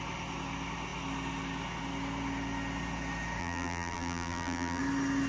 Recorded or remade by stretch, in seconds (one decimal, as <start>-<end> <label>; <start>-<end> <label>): 0.0-3.4 recorded; 3.4-4.8 remade; 4.8-5.3 recorded